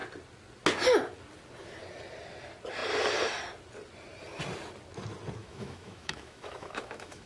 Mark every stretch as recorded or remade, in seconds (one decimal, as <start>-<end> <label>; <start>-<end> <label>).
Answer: 0.0-5.4 recorded; 5.4-7.3 remade